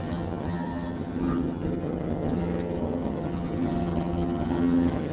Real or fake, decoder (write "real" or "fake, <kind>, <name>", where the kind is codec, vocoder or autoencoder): fake, vocoder, HiFi-GAN